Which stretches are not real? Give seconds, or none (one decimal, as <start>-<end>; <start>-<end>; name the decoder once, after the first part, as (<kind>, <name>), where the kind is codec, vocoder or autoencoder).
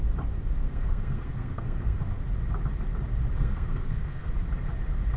0.6-2.0 (codec, SNAC); 3.4-4.3